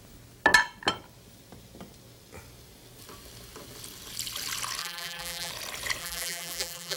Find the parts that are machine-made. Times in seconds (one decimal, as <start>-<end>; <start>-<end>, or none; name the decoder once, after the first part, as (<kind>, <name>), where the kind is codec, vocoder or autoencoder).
4.8-5.5 (vocoder, BigVGAN v2); 6.0-7.0